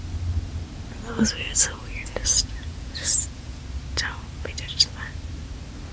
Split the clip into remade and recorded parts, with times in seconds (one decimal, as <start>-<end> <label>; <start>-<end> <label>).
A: 0.0-1.8 recorded; 1.8-3.6 remade; 3.6-5.9 recorded